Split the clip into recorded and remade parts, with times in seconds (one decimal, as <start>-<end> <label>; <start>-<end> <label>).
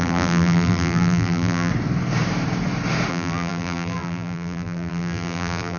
0.0-1.7 remade; 1.7-3.1 recorded; 3.1-5.8 remade